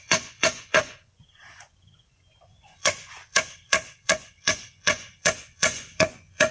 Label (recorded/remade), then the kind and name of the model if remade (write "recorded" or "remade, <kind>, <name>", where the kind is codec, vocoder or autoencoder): remade, vocoder, Vocos